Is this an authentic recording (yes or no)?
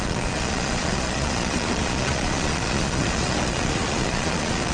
no